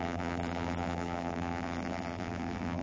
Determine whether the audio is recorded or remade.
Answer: remade